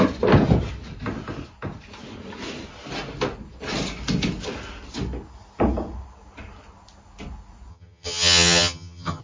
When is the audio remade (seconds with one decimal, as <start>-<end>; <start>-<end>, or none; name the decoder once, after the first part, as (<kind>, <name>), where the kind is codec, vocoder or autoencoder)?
7.7-9.2 (vocoder, HiFi-GAN)